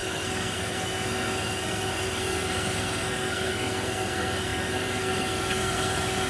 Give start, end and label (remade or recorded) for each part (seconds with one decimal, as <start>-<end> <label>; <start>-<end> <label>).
0.0-6.3 remade